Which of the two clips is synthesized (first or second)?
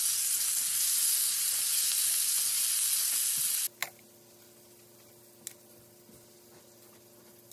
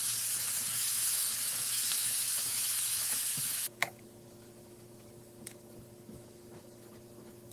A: second